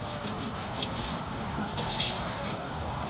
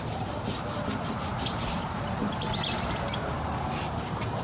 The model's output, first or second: first